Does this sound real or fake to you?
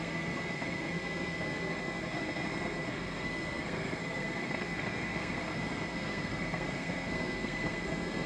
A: fake